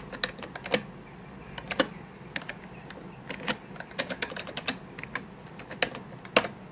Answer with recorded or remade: recorded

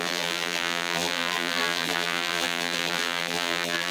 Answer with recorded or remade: remade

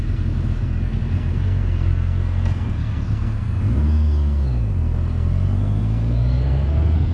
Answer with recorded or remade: remade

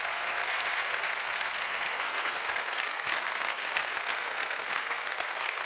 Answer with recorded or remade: remade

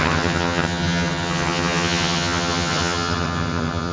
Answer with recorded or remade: remade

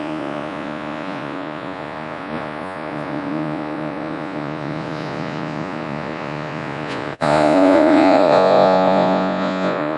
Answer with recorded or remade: remade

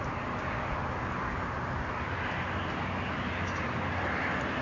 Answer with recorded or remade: recorded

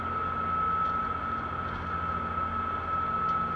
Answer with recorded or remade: recorded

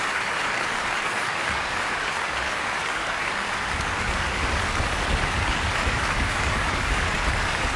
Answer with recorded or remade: remade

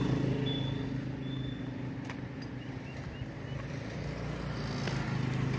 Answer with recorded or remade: recorded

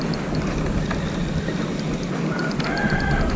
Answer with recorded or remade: recorded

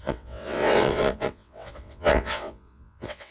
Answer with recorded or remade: remade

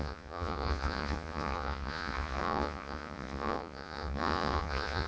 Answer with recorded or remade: remade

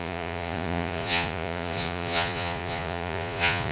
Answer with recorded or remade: remade